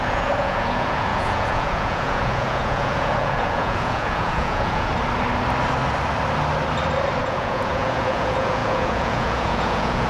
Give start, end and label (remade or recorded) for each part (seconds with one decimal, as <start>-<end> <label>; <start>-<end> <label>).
0.0-4.9 remade; 4.9-7.2 recorded; 7.2-10.1 remade